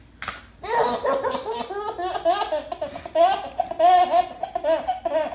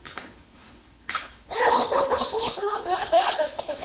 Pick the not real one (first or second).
second